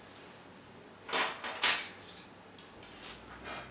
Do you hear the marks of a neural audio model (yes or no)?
no